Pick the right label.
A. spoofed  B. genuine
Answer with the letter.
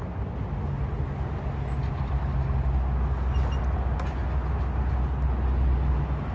B